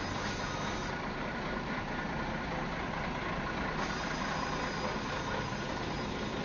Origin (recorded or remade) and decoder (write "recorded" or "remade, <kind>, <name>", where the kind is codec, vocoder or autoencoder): recorded